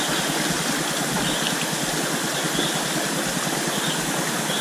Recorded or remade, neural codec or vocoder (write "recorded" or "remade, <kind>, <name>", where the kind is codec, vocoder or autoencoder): recorded